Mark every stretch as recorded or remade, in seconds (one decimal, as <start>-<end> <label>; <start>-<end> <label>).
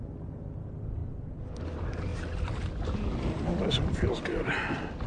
0.0-5.1 recorded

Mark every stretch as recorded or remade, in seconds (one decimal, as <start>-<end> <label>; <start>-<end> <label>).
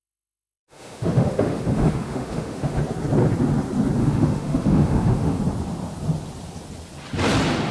0.0-2.8 remade; 2.8-4.0 recorded; 4.0-5.4 remade; 5.4-7.7 recorded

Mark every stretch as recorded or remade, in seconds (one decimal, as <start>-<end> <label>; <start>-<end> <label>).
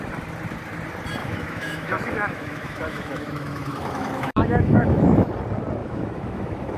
0.0-1.2 recorded; 1.2-5.3 remade; 5.3-5.8 recorded; 5.8-6.8 remade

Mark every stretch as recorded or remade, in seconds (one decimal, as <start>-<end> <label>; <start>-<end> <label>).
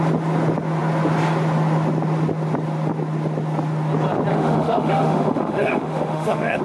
0.0-4.3 recorded; 4.3-6.6 remade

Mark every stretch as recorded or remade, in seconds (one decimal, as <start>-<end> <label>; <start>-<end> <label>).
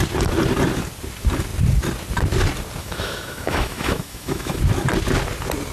0.0-2.8 recorded; 2.8-4.6 remade; 4.6-5.7 recorded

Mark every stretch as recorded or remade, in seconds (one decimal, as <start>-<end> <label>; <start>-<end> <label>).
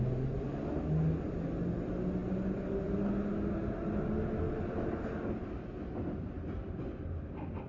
0.0-7.7 recorded